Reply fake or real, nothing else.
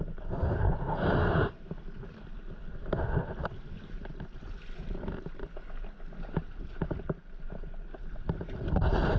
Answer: real